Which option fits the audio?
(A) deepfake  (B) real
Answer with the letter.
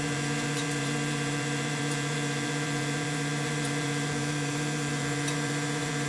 A